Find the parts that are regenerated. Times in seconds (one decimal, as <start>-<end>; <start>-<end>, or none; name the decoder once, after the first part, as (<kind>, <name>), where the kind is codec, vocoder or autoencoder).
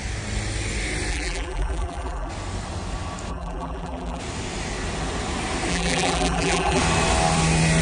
1.1-2.3 (vocoder, BigVGAN v2); 3.3-4.2; 5.7-6.8